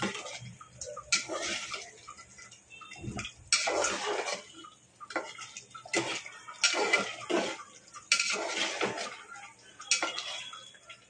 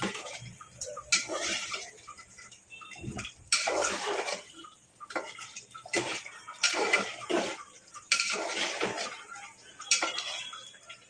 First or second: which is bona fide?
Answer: first